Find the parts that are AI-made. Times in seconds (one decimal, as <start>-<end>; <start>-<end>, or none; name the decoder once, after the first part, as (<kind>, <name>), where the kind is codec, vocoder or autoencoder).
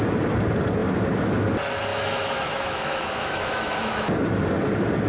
1.9-4.1 (autoencoder, DAC-VAE)